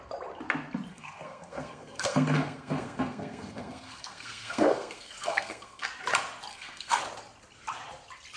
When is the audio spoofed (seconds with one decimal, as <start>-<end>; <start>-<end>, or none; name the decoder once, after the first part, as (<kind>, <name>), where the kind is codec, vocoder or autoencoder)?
0.9-5.9 (codec, SNAC); 6.5-7.0